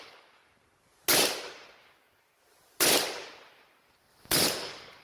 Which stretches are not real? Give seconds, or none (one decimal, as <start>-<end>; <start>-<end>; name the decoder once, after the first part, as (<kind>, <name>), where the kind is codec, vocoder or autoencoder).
0.0-0.4 (codec, DAC); 1.8-2.3; 4.5-5.0